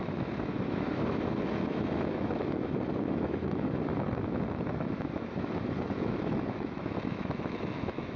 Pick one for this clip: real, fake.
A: fake